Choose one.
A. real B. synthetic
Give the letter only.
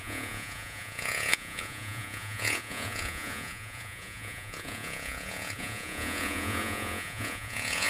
B